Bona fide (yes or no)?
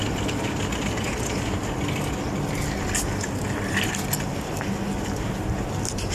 yes